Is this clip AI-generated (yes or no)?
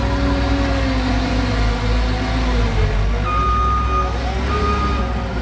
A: no